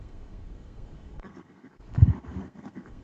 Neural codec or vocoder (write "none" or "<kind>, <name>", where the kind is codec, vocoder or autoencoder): codec, SNAC